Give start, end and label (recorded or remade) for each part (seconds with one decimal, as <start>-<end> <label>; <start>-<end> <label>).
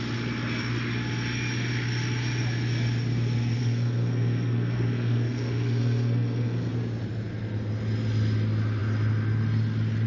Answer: 0.0-3.6 recorded; 3.6-6.7 remade; 6.7-10.1 recorded